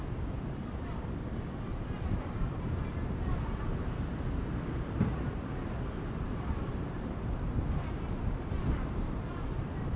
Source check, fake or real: fake